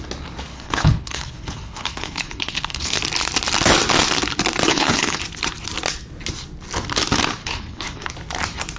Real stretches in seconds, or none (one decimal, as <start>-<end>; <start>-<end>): 0.0-0.5; 3.0-4.7; 5.2-7.4; 8.1-8.8